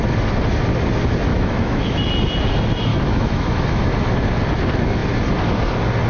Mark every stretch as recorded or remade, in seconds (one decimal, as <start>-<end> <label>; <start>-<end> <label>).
0.0-1.3 recorded; 1.3-2.1 remade; 2.1-2.9 recorded; 2.9-3.8 remade; 3.8-6.1 recorded